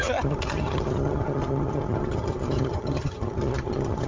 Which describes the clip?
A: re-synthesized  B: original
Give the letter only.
A